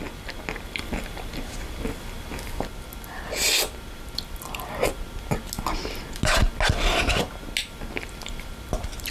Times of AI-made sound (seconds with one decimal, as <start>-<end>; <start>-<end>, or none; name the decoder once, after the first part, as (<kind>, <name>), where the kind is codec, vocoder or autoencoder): none